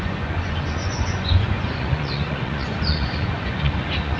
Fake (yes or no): yes